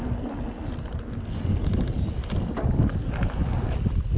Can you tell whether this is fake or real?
real